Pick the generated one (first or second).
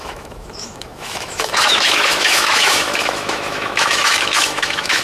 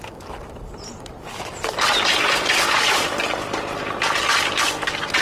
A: first